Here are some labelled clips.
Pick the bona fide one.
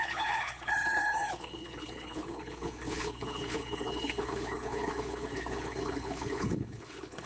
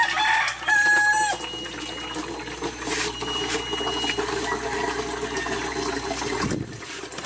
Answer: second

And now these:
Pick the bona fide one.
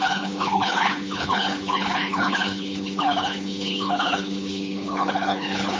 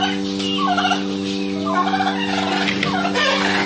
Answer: second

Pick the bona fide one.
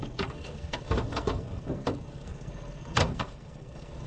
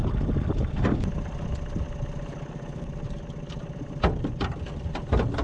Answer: second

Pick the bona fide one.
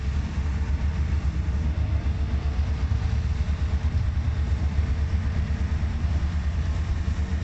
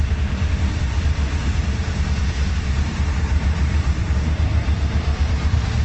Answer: first